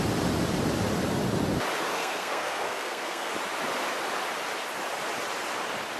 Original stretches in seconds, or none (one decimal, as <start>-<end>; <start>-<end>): 0.0-1.9; 3.3-6.0